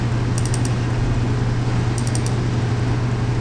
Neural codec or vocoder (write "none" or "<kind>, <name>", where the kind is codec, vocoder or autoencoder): none